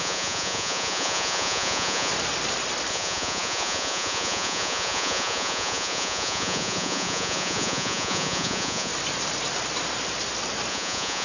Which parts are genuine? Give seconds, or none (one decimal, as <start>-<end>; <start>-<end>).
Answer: 2.1-2.9; 8.9-10.7